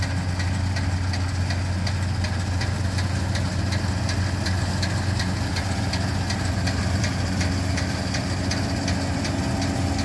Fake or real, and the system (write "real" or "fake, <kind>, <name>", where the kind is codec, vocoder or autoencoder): real